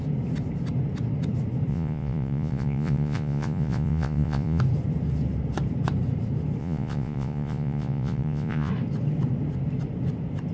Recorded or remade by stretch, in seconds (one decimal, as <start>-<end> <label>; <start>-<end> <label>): 0.0-1.7 recorded; 1.7-4.6 remade; 4.6-6.6 recorded; 6.6-8.7 remade; 8.7-10.5 recorded